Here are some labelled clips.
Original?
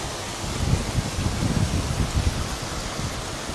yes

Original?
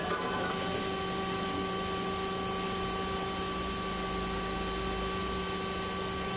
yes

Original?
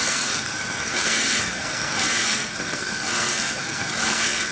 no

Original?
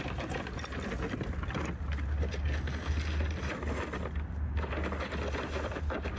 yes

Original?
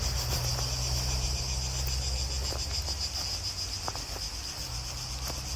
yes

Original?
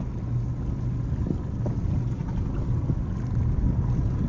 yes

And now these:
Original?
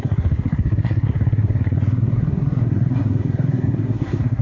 no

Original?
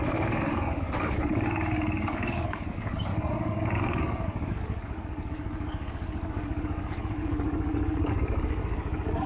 no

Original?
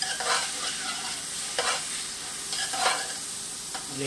yes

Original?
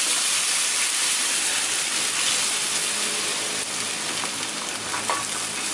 yes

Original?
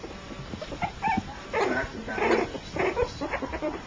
no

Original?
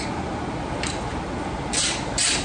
yes